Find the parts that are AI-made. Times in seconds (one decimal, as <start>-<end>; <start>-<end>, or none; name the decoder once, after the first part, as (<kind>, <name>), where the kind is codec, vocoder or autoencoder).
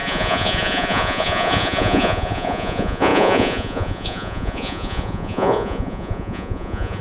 0.0-7.0 (vocoder, Vocos)